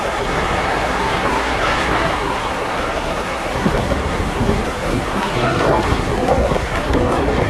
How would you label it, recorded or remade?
remade